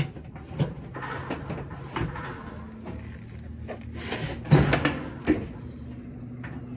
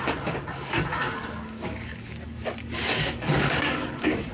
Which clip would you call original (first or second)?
first